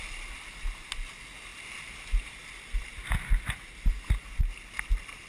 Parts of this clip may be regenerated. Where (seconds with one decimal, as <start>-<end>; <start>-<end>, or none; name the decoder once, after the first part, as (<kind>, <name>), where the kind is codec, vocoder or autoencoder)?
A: none